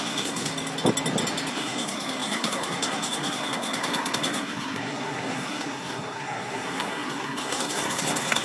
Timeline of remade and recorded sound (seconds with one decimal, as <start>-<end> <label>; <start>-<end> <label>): 0.0-0.5 remade; 0.5-1.5 recorded; 1.5-8.4 remade